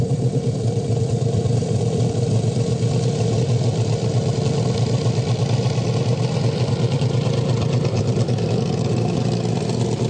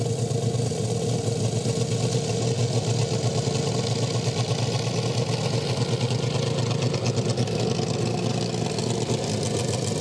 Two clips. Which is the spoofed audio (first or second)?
first